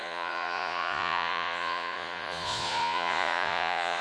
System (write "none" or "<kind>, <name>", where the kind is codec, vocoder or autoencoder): vocoder, Vocos